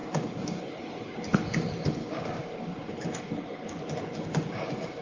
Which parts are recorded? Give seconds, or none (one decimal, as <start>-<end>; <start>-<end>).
0.6-2.0; 2.9-4.3